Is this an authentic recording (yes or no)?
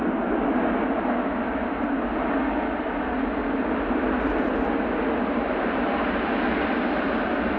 yes